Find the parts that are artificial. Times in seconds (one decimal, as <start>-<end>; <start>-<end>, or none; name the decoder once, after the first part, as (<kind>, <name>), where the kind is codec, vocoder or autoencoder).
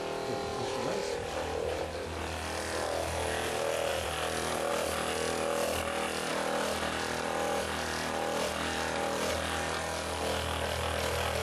0.5-1.8 (vocoder, BigVGAN v2); 3.9-4.7; 6.3-9.3